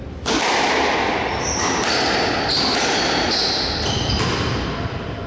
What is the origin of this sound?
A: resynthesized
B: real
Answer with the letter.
B